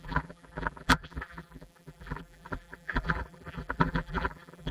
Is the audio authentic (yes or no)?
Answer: no